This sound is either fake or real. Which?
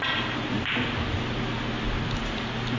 real